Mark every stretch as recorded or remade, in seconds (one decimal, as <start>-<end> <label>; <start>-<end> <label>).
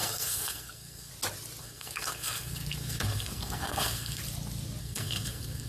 0.0-1.1 remade; 1.1-1.6 recorded; 1.6-4.2 remade; 4.2-4.8 recorded; 4.8-5.7 remade